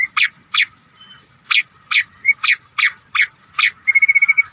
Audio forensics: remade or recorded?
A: recorded